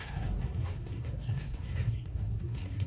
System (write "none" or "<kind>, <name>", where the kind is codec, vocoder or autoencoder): codec, SNAC